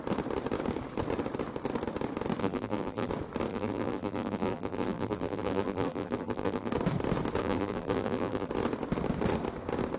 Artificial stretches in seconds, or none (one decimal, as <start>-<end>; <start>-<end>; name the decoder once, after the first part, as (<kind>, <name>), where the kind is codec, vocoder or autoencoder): 2.4-3.1 (vocoder, BigVGAN v2); 3.5-6.7; 7.4-8.5